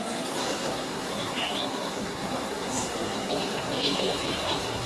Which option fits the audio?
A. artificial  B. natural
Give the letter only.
A